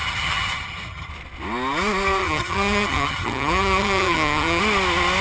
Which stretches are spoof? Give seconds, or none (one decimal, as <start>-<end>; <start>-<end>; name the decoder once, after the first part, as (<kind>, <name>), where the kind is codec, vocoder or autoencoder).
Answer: 0.0-1.1 (vocoder, HiFi-GAN); 2.2-4.6